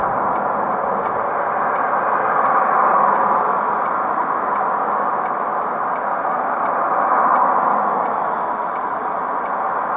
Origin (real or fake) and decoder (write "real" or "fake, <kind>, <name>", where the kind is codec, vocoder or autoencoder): real